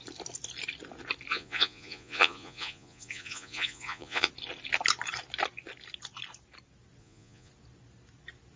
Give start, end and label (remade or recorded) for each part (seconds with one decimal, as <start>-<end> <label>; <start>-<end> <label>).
0.0-1.3 recorded; 1.3-4.3 remade; 4.3-7.0 recorded; 7.0-7.5 remade; 7.5-8.6 recorded